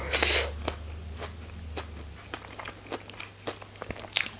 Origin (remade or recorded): recorded